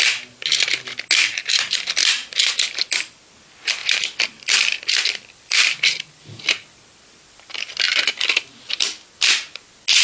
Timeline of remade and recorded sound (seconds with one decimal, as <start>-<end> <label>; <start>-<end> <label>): 0.0-3.8 recorded; 3.8-8.1 remade; 8.1-10.0 recorded